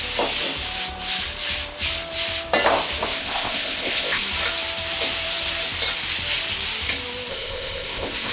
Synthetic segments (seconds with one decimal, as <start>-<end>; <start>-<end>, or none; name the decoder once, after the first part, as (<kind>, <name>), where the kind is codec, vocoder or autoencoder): 3.2-4.2 (codec, ZipCodec); 7.3-8.3

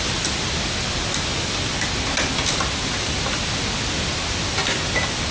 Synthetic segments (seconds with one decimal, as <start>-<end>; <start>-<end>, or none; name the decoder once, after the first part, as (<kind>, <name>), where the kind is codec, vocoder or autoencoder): none

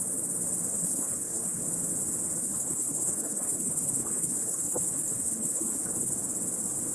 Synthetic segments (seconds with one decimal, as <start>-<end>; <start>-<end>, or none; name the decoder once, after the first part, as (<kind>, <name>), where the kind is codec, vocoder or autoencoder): 0.7-1.6 (codec, HILCodec); 2.4-6.1

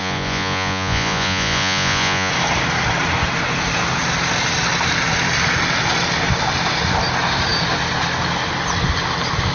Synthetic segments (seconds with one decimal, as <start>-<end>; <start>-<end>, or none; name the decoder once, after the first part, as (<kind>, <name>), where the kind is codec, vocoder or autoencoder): 0.0-2.3 (vocoder, Vocos)

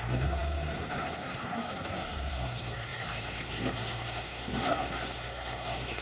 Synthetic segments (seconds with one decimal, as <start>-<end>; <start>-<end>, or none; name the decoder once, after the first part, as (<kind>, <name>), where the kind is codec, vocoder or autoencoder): 0.0-6.0 (codec, SNAC)

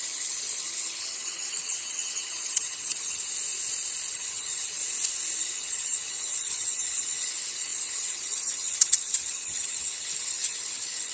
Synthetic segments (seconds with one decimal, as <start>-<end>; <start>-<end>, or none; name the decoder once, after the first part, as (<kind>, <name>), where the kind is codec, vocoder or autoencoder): 0.0-3.2 (vocoder, HiFi-GAN); 4.1-4.8; 5.4-11.1

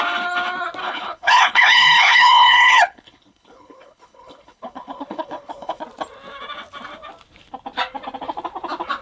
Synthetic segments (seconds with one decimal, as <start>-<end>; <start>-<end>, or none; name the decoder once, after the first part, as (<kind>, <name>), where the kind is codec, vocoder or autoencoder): 0.8-5.8 (codec, HILCodec)

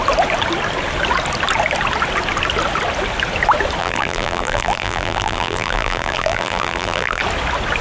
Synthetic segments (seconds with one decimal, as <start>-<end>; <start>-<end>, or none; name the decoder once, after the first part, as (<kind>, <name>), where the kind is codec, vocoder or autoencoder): 3.8-7.2 (vocoder, BigVGAN v2)